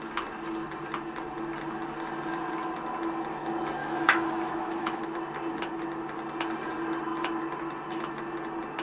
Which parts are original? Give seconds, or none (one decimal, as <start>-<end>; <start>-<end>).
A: 0.0-3.8; 5.0-8.8